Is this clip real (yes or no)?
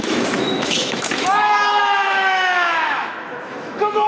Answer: no